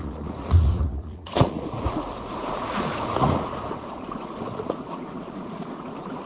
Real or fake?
fake